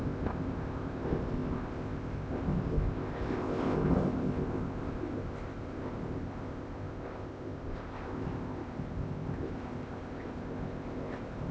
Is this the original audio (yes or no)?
no